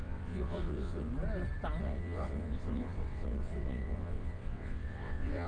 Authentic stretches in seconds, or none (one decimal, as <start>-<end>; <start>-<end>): 1.1-1.8